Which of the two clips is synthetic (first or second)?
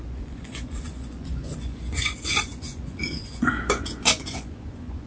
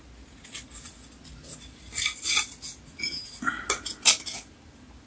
first